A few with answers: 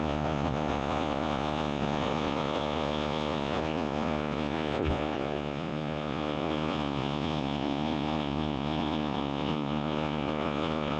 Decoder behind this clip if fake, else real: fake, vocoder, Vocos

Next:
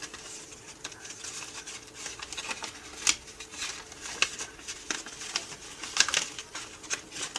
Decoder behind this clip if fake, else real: real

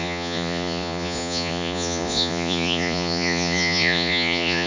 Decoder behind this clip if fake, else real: fake, vocoder, Vocos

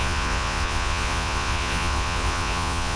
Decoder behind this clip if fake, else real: fake, vocoder, Vocos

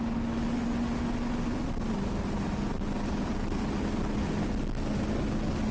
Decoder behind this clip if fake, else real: real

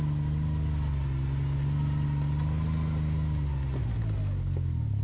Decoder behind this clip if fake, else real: real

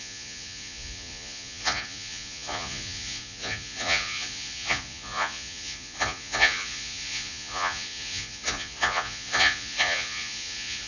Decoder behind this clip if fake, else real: fake, vocoder, Vocos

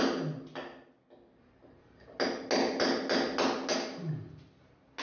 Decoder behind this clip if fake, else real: real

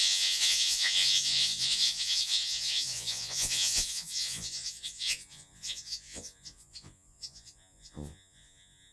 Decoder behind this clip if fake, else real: fake, vocoder, Vocos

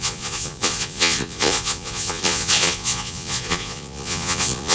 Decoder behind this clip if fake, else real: fake, vocoder, Vocos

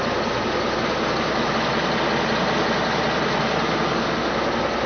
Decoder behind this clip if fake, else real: real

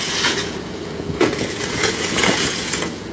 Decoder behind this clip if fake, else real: fake, vocoder, Vocos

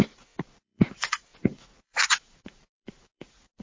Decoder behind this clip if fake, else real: fake, vocoder, Vocos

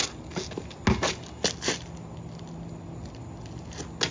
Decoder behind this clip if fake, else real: real